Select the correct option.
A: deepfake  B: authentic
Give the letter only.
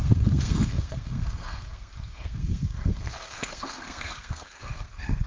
A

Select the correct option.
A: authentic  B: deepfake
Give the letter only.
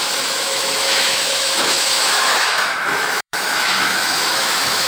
B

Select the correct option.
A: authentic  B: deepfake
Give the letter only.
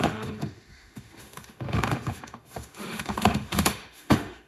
B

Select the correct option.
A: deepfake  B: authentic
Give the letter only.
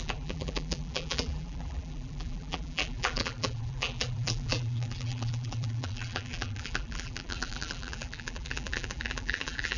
A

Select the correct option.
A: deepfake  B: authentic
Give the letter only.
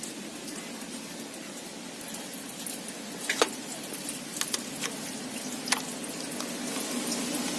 B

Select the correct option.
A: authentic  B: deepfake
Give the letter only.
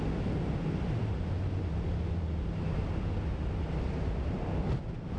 A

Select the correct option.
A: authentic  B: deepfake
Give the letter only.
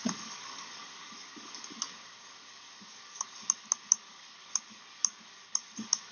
B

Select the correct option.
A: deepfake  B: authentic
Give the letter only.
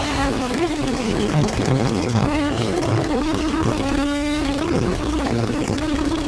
A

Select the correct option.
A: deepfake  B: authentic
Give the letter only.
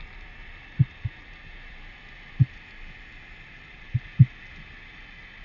B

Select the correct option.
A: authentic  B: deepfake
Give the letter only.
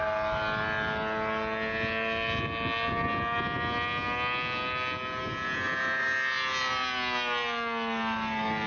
A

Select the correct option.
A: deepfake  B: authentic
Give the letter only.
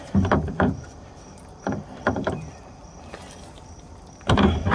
A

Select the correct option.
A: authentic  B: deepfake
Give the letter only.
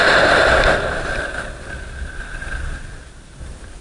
A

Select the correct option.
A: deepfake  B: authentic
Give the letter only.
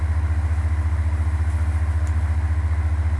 B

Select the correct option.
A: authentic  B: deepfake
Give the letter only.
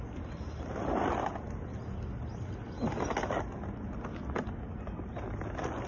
A